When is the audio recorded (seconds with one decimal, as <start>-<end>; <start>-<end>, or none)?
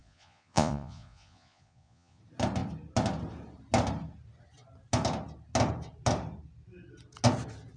2.2-7.8